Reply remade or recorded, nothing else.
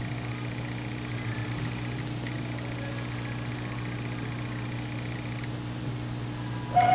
recorded